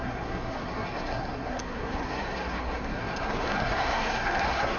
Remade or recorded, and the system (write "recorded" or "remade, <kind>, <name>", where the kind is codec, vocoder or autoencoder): remade, codec, SNAC